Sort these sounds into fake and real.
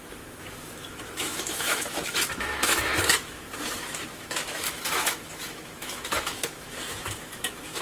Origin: fake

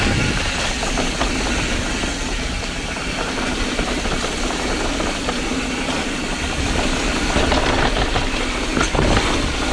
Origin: real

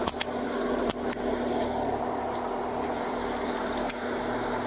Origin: real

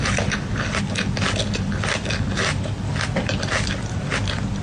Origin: real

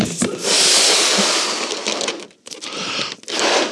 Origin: real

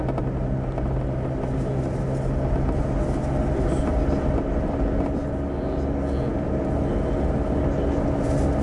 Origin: real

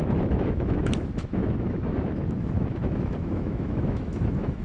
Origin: fake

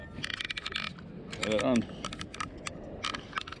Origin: real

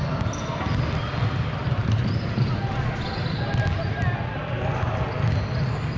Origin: real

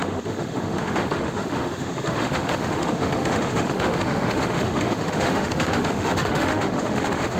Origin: fake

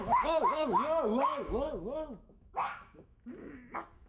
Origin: fake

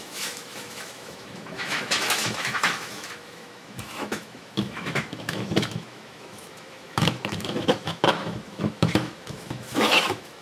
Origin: fake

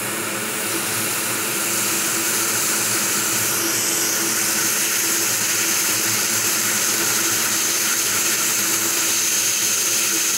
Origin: real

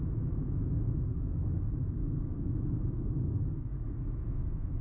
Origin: fake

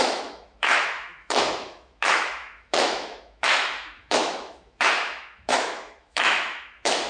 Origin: fake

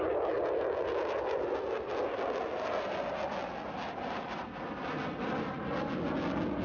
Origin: real